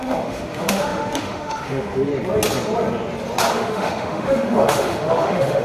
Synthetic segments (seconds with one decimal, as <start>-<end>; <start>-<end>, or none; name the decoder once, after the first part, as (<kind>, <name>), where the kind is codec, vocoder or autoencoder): 0.0-2.1 (autoencoder, DAC-VAE); 3.5-5.6